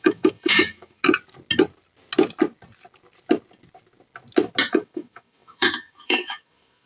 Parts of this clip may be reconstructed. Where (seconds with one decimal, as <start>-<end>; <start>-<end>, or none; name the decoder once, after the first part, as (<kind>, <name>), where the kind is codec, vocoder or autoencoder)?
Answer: 0.0-1.0 (autoencoder, DAC-VAE); 4.7-6.9